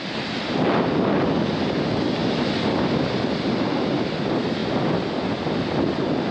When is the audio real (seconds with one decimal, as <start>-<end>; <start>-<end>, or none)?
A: 0.0-6.3